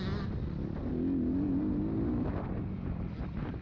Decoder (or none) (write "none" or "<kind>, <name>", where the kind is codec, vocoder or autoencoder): none